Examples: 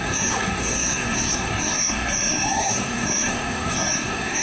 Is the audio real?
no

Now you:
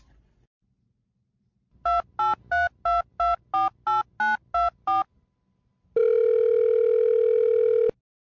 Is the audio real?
yes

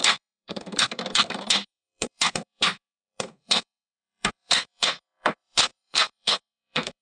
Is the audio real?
no